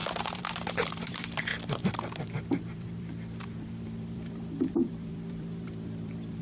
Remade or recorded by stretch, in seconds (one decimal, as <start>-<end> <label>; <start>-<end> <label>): 0.0-6.4 remade